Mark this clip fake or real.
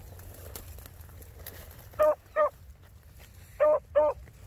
real